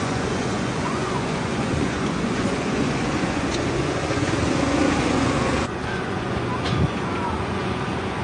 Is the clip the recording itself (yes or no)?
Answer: no